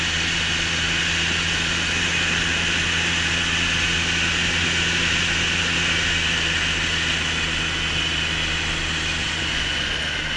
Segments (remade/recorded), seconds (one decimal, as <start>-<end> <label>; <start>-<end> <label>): 0.0-9.2 recorded; 9.2-9.9 remade; 9.9-10.4 recorded